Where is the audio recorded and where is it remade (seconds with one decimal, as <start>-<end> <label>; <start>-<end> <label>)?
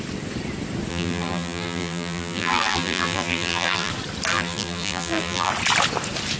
0.0-0.9 recorded; 0.9-3.9 remade; 3.9-4.3 recorded; 4.3-5.5 remade; 5.5-6.4 recorded